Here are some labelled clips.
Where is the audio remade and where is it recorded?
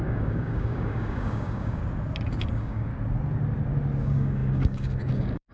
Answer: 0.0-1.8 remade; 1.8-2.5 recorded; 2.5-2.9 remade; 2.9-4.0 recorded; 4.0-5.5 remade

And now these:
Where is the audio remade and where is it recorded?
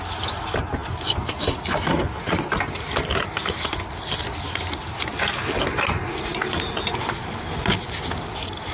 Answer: 0.0-8.7 recorded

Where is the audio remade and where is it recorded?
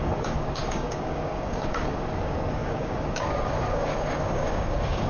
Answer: 0.0-5.1 remade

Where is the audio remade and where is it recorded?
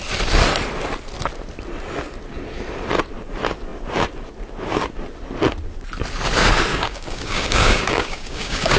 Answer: 0.0-6.7 recorded; 6.7-8.8 remade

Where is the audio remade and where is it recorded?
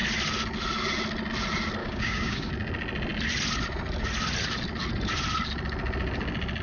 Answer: 0.0-1.8 recorded; 1.8-2.5 remade; 2.5-6.6 recorded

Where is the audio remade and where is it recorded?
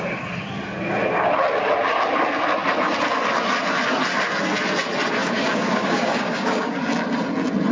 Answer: 0.0-5.2 recorded; 5.2-6.8 remade; 6.8-7.7 recorded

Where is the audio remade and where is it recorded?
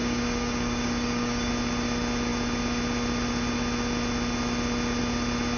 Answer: 0.0-1.5 remade; 1.5-5.6 recorded